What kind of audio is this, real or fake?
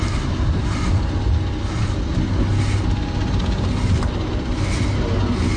real